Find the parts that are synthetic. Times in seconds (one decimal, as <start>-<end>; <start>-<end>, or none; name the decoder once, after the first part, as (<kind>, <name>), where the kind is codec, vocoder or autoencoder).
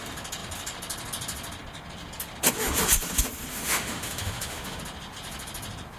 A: 3.5-4.8 (autoencoder, DAC-VAE)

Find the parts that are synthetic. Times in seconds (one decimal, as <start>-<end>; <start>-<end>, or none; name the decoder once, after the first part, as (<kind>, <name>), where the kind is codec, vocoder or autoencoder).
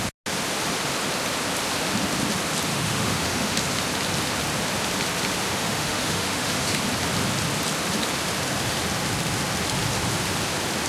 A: 2.7-3.6 (autoencoder, DAC-VAE); 5.4-6.8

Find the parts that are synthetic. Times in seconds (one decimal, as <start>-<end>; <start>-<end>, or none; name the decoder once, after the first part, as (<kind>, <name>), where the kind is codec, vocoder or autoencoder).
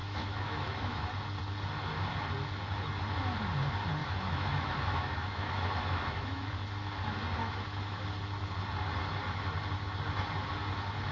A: 0.0-1.1 (autoencoder, DAC-VAE); 4.0-6.5; 7.4-8.0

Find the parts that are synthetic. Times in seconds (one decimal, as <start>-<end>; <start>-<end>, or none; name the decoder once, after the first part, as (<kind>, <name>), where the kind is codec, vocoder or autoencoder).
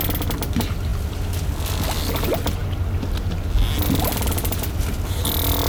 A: none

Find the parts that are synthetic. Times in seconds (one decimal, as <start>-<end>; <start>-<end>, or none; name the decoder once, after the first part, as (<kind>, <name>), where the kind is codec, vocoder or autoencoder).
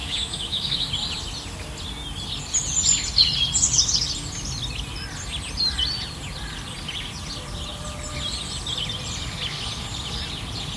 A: 0.0-0.9 (autoencoder, DAC-VAE)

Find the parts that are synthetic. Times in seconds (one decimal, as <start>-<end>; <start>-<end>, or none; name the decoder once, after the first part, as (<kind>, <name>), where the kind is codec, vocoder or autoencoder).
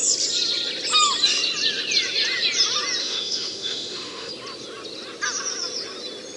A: 3.0-4.3 (autoencoder, DAC-VAE)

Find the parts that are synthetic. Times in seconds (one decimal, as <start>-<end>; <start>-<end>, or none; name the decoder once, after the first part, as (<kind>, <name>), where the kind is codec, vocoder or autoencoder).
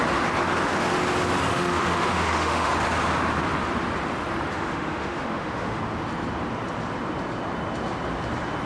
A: 1.5-2.7 (autoencoder, DAC-VAE); 4.5-5.8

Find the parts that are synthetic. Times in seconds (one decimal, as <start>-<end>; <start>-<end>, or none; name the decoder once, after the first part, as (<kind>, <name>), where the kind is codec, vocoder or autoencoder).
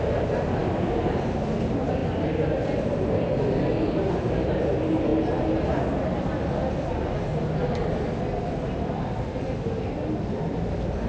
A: none